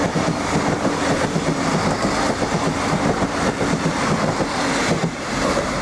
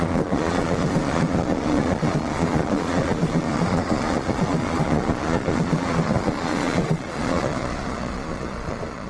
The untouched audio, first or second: first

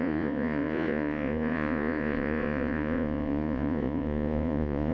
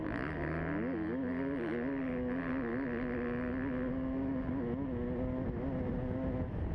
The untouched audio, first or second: second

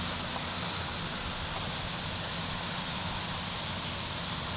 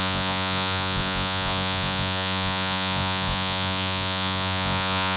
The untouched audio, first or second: first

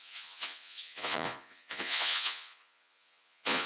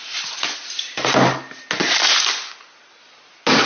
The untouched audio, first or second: second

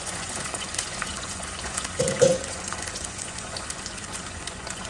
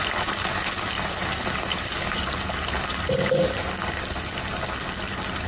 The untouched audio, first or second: second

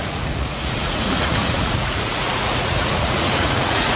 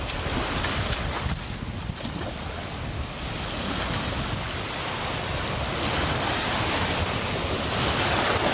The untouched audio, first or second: second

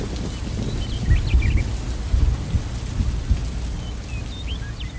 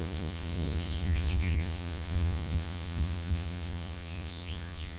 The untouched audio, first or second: first